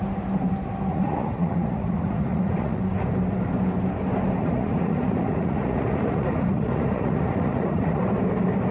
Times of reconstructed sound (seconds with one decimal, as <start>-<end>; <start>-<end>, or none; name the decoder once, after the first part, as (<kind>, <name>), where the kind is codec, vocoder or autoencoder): 0.9-2.8 (vocoder, Vocos); 4.4-8.0